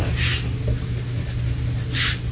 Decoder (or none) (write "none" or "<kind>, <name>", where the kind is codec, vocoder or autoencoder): none